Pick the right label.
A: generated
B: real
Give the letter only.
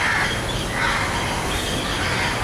B